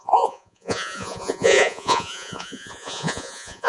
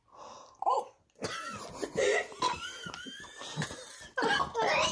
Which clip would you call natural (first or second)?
second